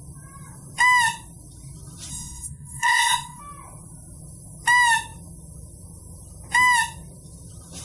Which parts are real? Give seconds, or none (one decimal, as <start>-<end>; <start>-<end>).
0.0-2.1; 3.4-7.8